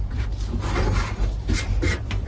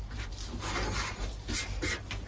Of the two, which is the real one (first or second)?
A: second